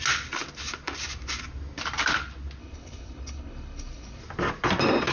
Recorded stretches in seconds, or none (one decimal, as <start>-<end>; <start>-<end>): 0.0-2.6; 4.2-5.1